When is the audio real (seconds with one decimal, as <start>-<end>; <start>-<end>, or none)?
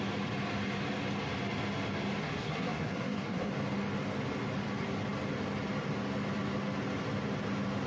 0.0-2.2; 3.5-7.9